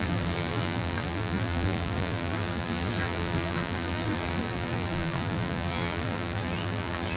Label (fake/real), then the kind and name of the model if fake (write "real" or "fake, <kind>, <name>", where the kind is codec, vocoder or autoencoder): fake, vocoder, BigVGAN v2